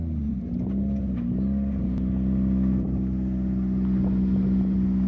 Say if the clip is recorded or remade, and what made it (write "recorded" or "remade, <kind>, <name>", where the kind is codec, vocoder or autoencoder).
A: recorded